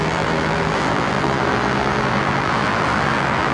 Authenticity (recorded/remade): remade